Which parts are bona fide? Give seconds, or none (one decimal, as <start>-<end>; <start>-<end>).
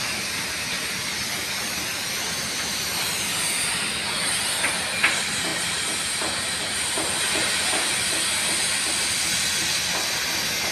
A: 0.0-5.5; 6.2-10.7